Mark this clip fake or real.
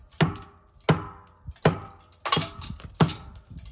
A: real